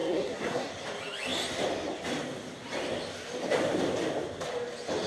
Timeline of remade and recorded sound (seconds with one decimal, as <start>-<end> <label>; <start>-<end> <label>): 0.0-0.7 remade; 0.7-5.1 recorded